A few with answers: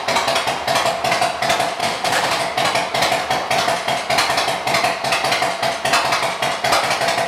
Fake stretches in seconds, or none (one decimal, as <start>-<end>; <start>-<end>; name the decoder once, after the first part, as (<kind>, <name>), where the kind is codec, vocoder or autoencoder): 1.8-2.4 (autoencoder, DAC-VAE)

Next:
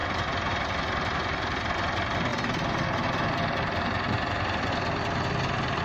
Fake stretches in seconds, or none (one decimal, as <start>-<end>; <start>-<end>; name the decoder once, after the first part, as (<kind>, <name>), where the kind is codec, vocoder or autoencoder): none

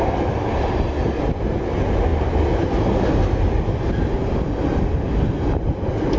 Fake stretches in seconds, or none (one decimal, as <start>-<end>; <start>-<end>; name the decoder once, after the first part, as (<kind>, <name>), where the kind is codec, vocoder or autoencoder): none

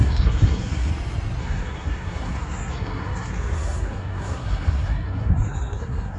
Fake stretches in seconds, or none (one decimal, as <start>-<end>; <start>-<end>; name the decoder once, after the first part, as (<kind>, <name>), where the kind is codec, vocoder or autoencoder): 0.0-0.9 (codec, SNAC); 1.4-6.2